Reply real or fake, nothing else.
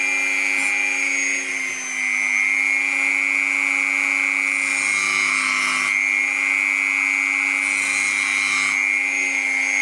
real